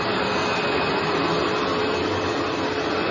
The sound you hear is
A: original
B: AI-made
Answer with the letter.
A